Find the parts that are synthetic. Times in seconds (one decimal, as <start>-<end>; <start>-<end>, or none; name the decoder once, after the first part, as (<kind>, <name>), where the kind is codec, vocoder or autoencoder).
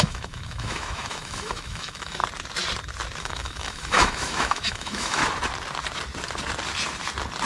0.0-2.2 (autoencoder, DAC-VAE); 3.2-5.2